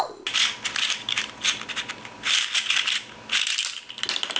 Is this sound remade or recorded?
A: recorded